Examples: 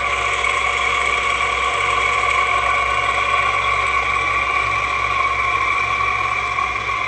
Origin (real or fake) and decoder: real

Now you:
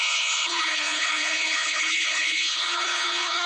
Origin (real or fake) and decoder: fake, codec, HILCodec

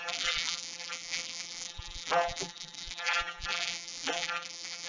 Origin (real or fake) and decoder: fake, vocoder, BigVGAN v2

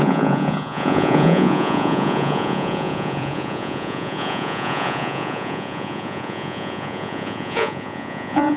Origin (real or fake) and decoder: fake, vocoder, Vocos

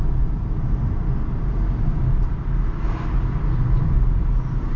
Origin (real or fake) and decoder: real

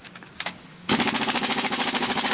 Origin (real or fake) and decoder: fake, codec, DAC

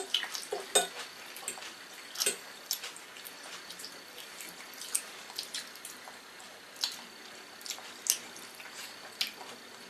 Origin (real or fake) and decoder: real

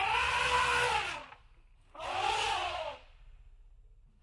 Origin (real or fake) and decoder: real